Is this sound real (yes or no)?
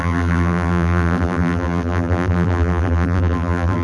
no